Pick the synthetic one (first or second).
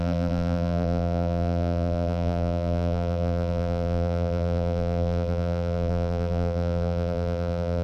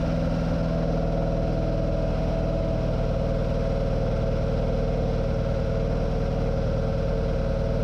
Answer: first